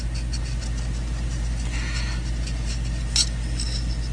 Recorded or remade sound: recorded